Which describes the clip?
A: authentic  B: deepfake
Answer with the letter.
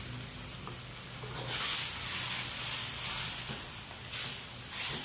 A